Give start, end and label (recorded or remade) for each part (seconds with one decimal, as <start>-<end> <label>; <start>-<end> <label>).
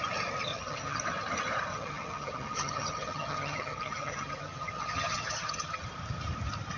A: 0.0-0.5 recorded; 0.5-1.0 remade; 1.0-1.7 recorded; 1.7-5.8 remade; 5.8-6.8 recorded